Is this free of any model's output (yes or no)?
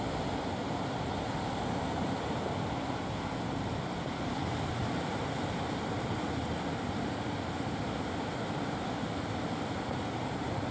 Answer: yes